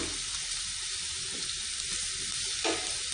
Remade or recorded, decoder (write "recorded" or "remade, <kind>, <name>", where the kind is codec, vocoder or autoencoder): recorded